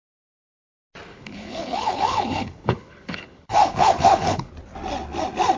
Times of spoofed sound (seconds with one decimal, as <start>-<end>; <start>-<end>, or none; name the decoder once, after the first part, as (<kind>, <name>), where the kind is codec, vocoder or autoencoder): 1.1-4.5 (codec, HILCodec)